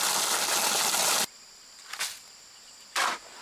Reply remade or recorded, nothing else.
recorded